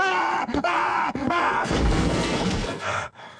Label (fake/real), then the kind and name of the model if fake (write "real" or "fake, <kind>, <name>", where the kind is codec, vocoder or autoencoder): fake, codec, SNAC